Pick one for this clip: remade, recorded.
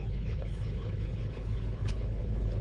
remade